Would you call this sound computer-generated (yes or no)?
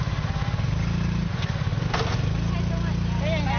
no